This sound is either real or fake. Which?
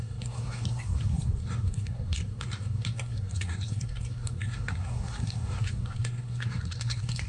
fake